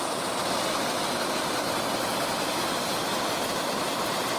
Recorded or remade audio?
recorded